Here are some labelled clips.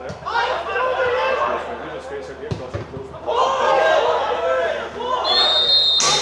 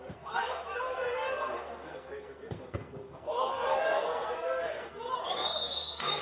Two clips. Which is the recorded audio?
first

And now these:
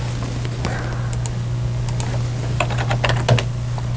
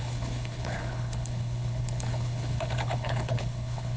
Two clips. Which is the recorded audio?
first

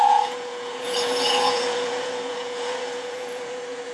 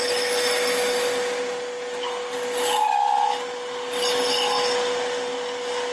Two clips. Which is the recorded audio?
second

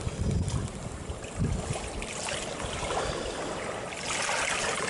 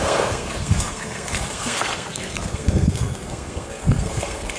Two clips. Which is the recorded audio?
first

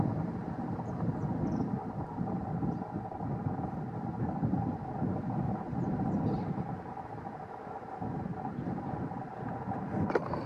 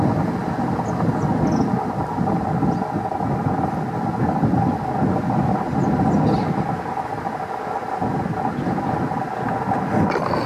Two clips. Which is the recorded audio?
second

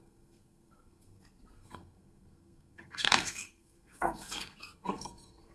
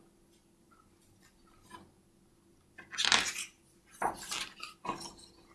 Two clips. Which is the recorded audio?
second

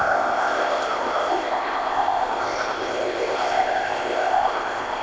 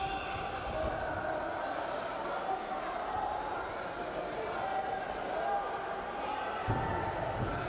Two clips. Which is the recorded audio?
second